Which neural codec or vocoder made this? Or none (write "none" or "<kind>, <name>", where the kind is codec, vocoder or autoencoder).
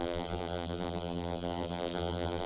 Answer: vocoder, BigVGAN v2